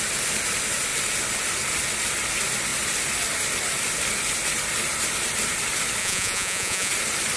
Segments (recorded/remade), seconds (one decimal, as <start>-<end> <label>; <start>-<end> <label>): 0.0-6.0 recorded; 6.0-6.9 remade; 6.9-7.4 recorded